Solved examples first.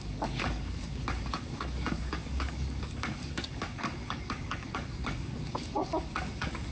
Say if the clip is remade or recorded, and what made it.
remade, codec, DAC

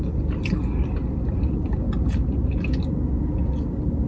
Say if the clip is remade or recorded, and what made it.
recorded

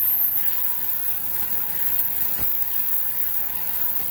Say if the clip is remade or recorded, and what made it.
recorded